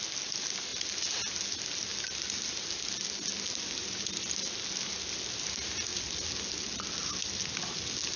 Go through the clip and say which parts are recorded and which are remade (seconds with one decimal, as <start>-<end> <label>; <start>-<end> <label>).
0.0-8.2 recorded